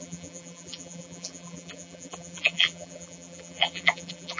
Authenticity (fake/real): fake